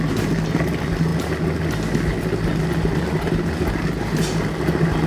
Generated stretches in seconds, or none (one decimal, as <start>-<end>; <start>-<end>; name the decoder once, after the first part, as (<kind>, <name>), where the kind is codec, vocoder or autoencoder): none

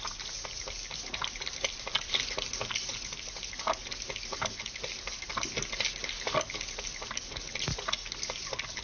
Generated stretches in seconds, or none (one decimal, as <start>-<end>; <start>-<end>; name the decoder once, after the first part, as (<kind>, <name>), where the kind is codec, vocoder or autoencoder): none

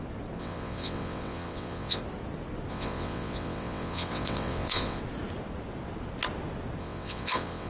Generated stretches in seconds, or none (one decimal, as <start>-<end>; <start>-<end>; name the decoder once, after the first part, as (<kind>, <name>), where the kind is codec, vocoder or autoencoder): 0.4-2.0 (vocoder, WaveNeXt); 2.7-5.0; 6.8-7.7

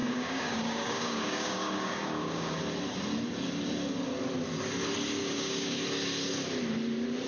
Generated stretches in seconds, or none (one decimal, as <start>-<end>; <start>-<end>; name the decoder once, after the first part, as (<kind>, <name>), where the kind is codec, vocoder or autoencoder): 0.0-2.6 (codec, DAC); 5.2-5.8